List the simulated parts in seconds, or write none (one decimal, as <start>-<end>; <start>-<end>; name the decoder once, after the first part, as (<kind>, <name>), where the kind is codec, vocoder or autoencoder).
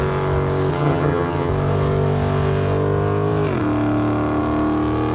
0.7-1.5 (vocoder, HiFi-GAN)